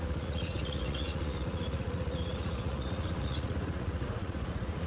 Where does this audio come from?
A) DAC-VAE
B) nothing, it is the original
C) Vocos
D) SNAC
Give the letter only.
C